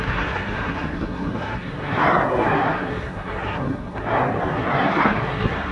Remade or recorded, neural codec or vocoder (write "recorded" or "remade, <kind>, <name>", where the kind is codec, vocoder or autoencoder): remade, codec, SNAC